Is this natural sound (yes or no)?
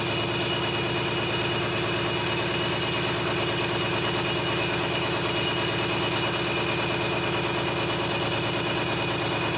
yes